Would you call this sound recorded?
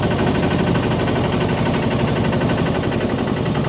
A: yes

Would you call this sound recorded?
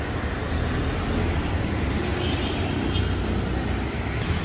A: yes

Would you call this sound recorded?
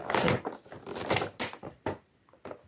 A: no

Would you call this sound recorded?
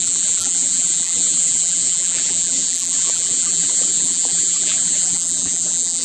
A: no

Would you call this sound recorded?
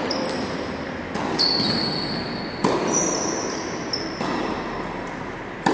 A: yes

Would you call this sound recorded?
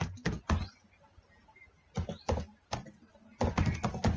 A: yes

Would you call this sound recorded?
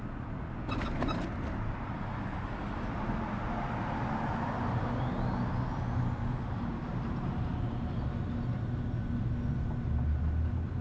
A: yes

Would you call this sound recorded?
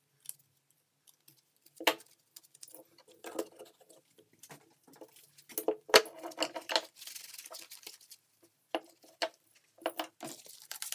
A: yes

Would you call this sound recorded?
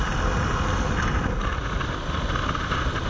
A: yes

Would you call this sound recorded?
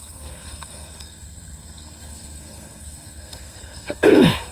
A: no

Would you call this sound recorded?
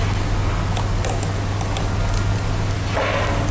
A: yes